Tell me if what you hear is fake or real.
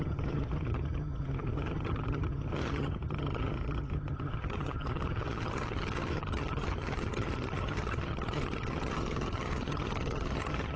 fake